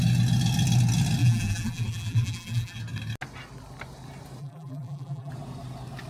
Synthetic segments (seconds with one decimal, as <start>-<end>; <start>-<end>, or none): 1.2-2.8; 4.4-5.3